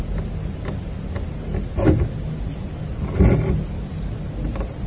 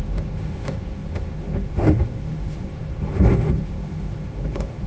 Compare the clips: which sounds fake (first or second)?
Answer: second